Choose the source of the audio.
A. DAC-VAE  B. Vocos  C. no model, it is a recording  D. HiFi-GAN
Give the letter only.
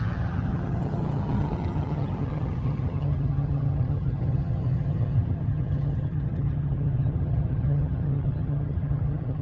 D